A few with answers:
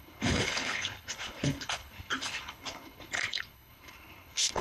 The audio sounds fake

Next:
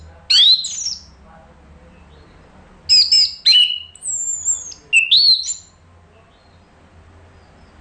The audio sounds real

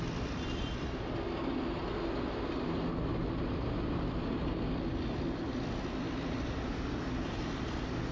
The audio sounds real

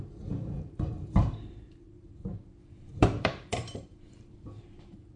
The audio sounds fake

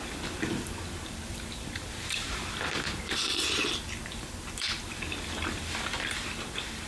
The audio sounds fake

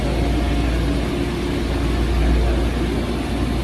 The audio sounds real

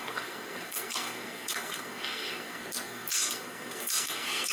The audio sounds fake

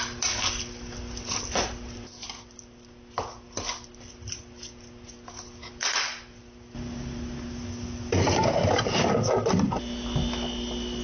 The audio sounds real